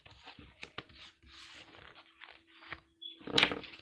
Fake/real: real